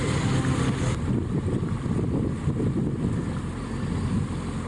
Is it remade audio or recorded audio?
recorded